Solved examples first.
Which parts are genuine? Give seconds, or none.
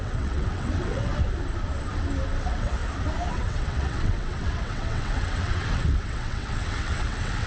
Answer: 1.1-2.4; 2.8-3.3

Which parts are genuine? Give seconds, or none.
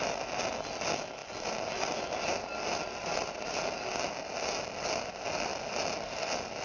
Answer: 0.0-6.6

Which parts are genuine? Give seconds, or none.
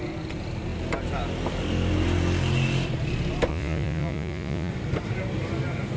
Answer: 0.0-3.5; 4.7-6.0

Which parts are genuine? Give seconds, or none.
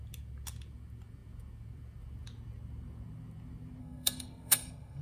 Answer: 0.0-3.8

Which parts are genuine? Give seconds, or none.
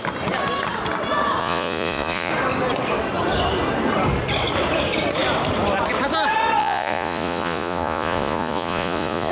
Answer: 0.0-1.4; 2.3-6.6